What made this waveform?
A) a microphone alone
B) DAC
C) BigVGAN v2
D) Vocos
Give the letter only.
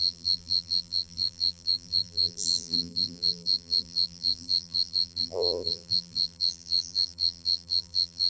C